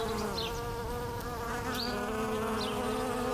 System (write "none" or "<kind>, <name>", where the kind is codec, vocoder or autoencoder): none